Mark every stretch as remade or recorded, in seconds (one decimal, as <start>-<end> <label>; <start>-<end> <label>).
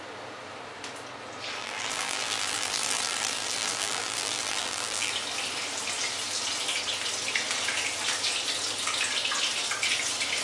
0.0-1.6 recorded; 1.6-5.1 remade; 5.1-10.4 recorded